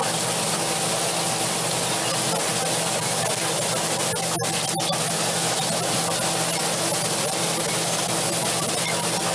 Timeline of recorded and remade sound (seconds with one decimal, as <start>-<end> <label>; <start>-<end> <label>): 0.0-9.3 recorded